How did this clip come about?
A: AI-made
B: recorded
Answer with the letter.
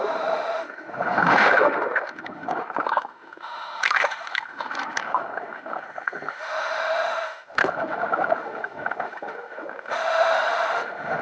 A